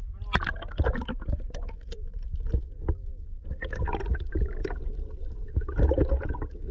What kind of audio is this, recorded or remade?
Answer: recorded